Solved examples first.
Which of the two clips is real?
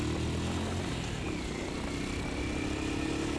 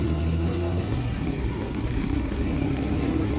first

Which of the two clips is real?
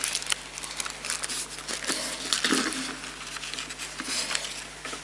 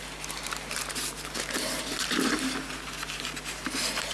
first